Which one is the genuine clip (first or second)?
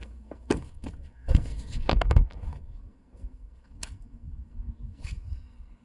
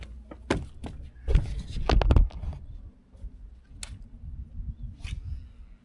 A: second